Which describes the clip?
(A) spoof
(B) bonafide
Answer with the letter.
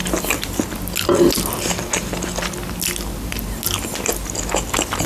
B